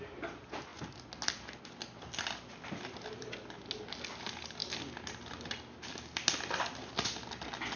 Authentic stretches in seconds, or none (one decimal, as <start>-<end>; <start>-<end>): 0.0-7.8